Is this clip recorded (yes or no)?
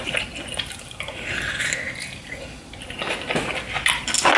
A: yes